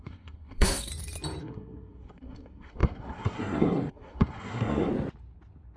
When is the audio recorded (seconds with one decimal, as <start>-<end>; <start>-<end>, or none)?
0.9-1.4; 4.9-5.8